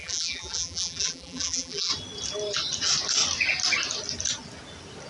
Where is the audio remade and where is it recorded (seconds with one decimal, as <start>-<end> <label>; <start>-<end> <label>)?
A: 0.0-1.9 remade; 1.9-5.1 recorded